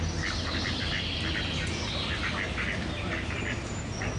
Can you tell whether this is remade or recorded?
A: recorded